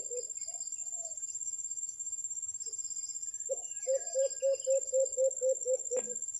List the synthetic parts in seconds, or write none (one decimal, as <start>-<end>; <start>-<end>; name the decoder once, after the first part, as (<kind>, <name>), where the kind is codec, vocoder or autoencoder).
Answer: 0.8-4.6 (vocoder, BigVGAN v2)